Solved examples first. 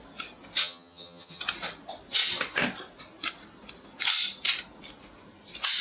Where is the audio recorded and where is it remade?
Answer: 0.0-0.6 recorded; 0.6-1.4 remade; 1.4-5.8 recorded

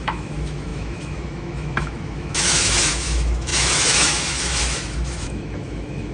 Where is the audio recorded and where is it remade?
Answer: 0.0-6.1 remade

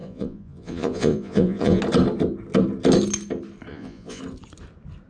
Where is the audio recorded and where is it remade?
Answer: 0.0-1.8 remade; 1.8-3.7 recorded; 3.7-4.2 remade; 4.2-5.1 recorded

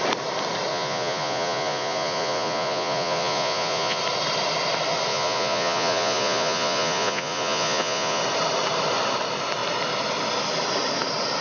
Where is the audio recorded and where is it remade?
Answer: 0.0-0.7 recorded; 0.7-4.0 remade; 4.0-5.1 recorded; 5.1-8.2 remade; 8.2-11.4 recorded

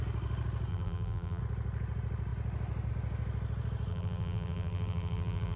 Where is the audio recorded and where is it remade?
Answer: 0.0-0.7 recorded; 0.7-1.4 remade; 1.4-3.9 recorded; 3.9-5.6 remade